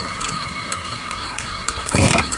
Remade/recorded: remade